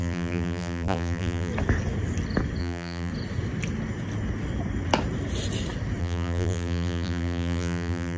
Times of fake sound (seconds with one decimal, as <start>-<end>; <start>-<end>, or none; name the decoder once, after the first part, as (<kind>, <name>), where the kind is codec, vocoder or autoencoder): 0.0-1.5 (vocoder, BigVGAN v2); 2.6-3.1; 6.0-8.2